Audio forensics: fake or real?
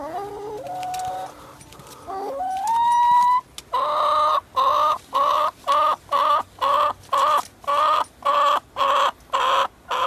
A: real